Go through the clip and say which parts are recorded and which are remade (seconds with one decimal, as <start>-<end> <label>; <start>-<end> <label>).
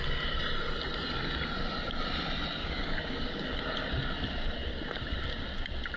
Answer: 0.0-2.6 recorded; 2.6-3.6 remade; 3.6-6.0 recorded